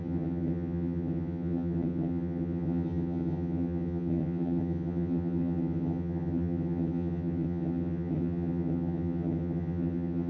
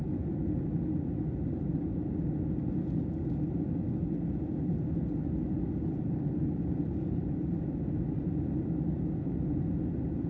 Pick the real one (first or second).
second